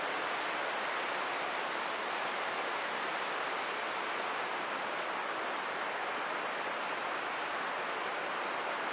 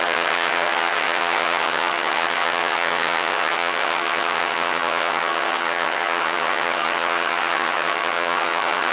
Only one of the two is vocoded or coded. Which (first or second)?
second